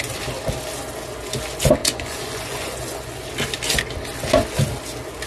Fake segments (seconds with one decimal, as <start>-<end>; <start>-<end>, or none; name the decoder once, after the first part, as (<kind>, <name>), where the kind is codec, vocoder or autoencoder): 1.8-3.3 (vocoder, Vocos)